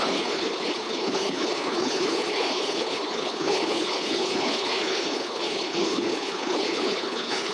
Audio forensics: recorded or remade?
remade